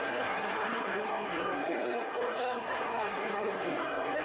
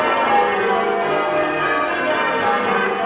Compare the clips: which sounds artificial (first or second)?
first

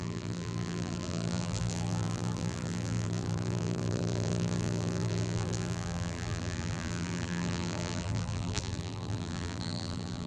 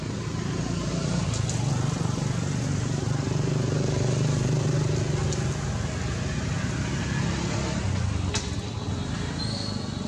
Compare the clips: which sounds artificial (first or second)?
first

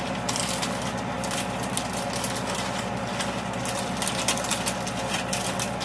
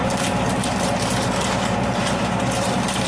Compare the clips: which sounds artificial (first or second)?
second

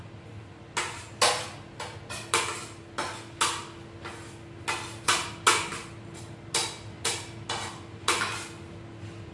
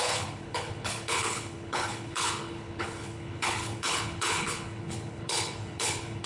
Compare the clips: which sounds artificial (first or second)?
second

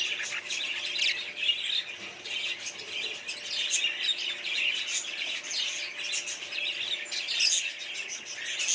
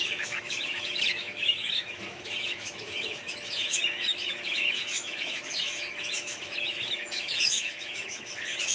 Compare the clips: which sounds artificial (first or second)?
second